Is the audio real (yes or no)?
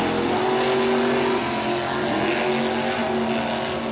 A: yes